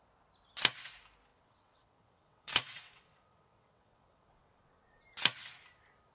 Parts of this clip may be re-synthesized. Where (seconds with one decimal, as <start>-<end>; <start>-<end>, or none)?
1.3-5.0